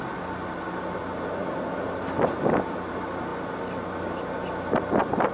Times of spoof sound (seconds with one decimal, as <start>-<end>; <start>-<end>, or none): none